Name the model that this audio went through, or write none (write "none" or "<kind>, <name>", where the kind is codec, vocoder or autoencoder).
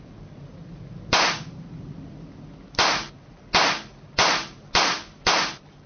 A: none